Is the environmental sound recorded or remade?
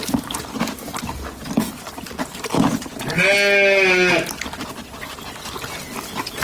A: recorded